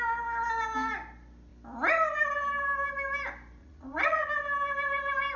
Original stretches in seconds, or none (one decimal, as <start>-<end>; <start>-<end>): 0.0-3.6; 4.3-5.4